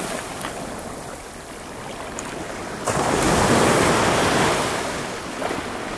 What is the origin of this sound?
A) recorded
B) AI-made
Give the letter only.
A